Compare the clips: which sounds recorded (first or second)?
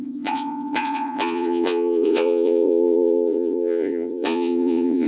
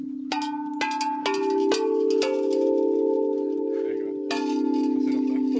second